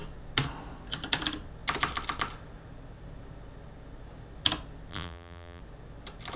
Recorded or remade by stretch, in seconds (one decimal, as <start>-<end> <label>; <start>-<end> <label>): 0.0-4.9 recorded; 4.9-5.6 remade; 5.6-6.4 recorded